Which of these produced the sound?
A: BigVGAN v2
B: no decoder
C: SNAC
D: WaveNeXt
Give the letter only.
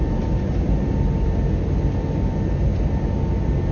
B